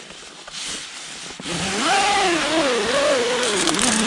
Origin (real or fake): real